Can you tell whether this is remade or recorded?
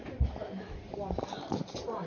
recorded